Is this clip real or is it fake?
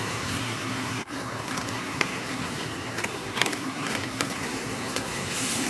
fake